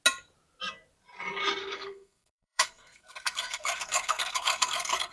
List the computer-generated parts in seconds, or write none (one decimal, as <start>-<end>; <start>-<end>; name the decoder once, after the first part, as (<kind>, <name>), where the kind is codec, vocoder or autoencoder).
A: 1.6-5.1 (codec, SNAC)